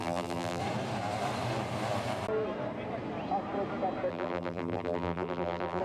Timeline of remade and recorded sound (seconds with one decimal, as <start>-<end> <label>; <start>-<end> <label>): 0.0-0.6 remade; 0.6-4.1 recorded; 4.1-5.8 remade